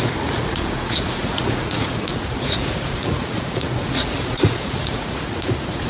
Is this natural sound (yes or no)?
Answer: no